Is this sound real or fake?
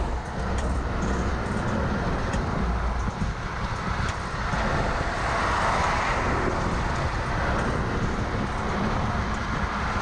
fake